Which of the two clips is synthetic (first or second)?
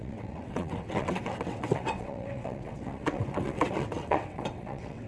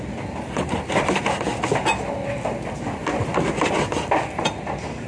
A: first